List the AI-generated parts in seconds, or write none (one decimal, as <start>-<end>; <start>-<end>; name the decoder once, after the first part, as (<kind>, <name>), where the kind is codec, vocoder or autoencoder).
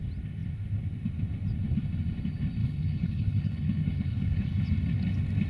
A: 2.6-4.7 (codec, HILCodec)